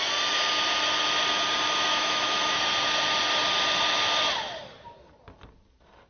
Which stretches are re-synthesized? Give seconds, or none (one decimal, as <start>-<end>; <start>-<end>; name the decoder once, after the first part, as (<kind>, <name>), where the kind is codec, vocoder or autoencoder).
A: 1.9-2.6 (autoencoder, DAC-VAE)